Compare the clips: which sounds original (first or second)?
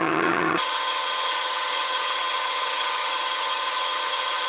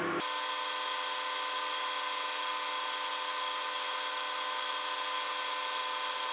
second